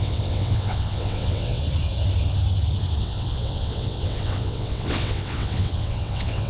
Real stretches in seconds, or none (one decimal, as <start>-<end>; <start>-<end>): 1.6-3.0